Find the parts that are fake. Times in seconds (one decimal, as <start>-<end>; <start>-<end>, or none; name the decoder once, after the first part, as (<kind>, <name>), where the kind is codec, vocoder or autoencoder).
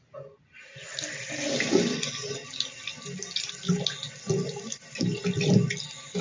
none